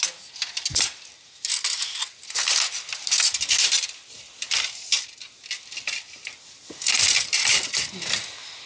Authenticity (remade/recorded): recorded